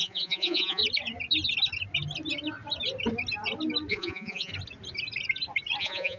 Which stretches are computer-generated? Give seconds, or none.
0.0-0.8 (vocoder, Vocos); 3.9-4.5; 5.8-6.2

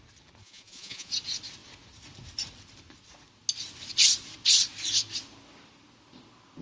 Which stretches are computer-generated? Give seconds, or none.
0.4-1.1 (vocoder, Vocos)

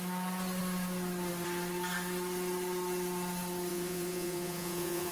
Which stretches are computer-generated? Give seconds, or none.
3.7-5.1 (vocoder, Vocos)

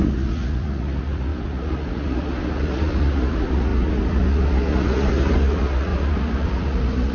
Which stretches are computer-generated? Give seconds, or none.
0.0-7.1 (vocoder, Vocos)

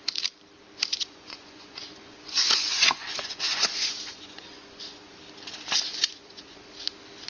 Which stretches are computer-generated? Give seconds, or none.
0.9-5.2 (vocoder, Vocos); 5.9-6.7

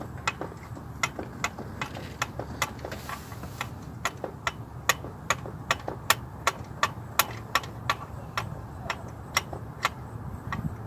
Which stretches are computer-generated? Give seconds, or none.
none

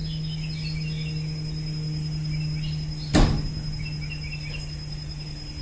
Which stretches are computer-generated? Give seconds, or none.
none

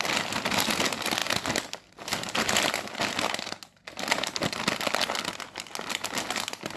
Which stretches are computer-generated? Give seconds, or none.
none